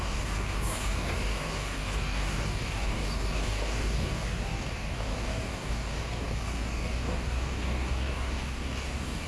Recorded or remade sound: remade